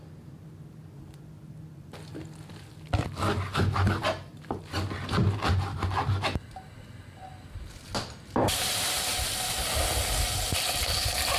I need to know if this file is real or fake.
real